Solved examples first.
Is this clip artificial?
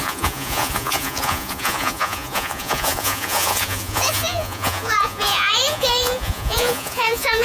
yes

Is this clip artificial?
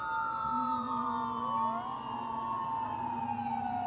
no